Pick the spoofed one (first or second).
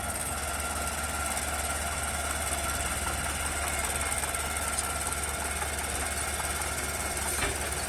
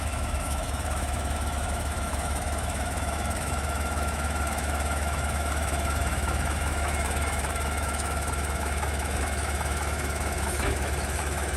second